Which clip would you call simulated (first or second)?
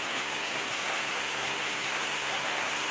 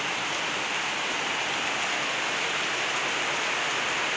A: first